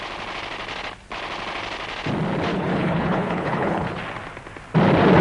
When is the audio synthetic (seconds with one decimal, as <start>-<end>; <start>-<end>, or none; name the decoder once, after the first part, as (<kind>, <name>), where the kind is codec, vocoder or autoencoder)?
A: 2.5-4.0 (codec, HILCodec)